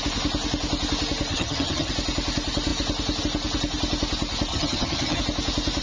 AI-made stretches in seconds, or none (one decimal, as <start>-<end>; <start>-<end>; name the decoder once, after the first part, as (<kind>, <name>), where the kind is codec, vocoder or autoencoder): 1.3-1.9 (vocoder, HiFi-GAN); 4.5-5.2